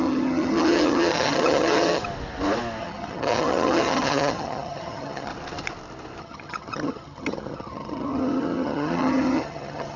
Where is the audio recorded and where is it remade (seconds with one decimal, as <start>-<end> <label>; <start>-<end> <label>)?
0.0-2.0 remade; 2.0-2.8 recorded; 2.8-5.3 remade; 5.3-6.2 recorded; 6.2-10.0 remade